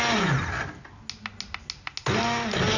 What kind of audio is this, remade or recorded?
recorded